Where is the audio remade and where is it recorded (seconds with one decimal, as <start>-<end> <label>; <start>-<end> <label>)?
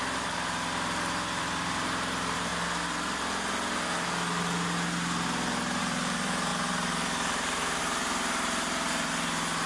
0.0-2.5 remade; 2.5-5.8 recorded; 5.8-9.7 remade